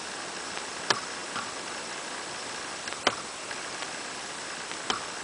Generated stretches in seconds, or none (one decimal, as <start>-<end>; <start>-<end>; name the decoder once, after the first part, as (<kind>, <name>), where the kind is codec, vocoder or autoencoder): none